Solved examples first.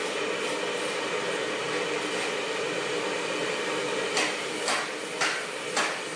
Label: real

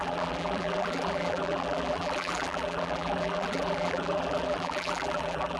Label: fake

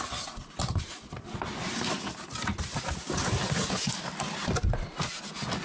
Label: real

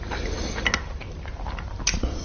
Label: real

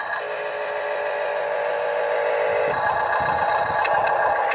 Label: real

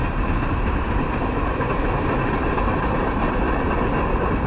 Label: real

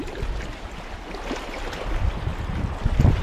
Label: real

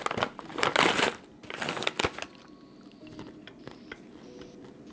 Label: real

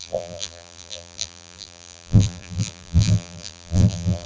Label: fake